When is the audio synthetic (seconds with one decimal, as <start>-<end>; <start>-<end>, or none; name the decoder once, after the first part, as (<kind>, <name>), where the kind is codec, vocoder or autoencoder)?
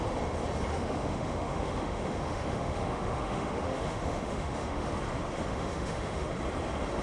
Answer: 0.7-4.9 (autoencoder, DAC-VAE); 5.5-6.3